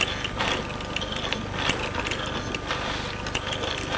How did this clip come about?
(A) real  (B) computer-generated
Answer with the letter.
A